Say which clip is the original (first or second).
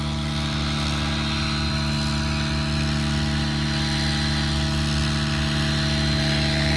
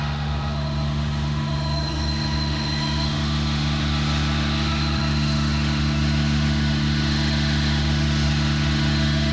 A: first